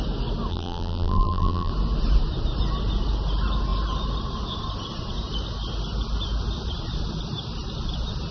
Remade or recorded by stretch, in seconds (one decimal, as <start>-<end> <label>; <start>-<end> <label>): 0.0-0.5 recorded; 0.5-1.7 remade; 1.7-8.3 recorded

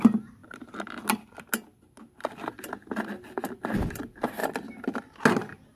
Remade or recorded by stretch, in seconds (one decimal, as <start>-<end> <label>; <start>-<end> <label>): 0.0-5.8 recorded

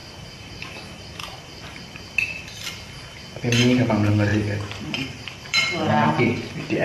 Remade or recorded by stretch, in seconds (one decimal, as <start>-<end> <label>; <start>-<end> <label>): 0.0-4.3 recorded; 4.3-6.2 remade; 6.2-6.8 recorded

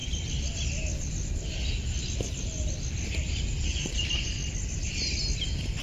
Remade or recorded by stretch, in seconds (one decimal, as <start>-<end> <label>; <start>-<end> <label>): 0.0-3.3 recorded; 3.3-4.4 remade; 4.4-5.8 recorded

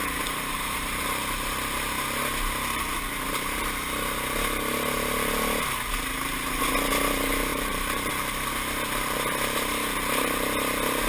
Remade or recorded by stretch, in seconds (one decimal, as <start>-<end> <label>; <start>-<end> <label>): 0.0-1.0 remade; 1.0-7.5 recorded; 7.5-8.1 remade; 8.1-11.1 recorded

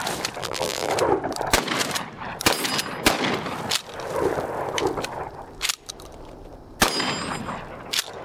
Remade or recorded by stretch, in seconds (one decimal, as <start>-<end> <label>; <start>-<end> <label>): 0.0-0.4 recorded; 0.4-0.9 remade; 0.9-8.2 recorded

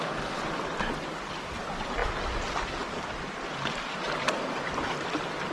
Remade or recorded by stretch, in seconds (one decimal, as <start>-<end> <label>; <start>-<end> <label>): 0.0-5.5 recorded

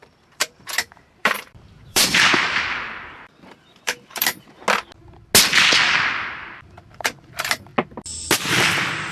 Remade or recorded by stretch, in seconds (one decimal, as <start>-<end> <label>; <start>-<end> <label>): 0.0-4.6 remade; 4.6-6.2 recorded; 6.2-7.7 remade; 7.7-9.1 recorded